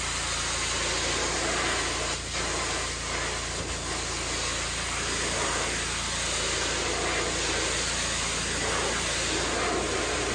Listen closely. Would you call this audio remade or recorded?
recorded